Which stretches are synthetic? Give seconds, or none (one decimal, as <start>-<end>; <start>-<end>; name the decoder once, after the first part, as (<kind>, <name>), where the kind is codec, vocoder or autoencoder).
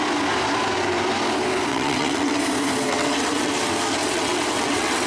1.7-2.4 (vocoder, WaveNeXt); 2.9-3.5; 4.0-5.1